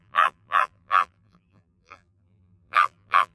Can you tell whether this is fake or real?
fake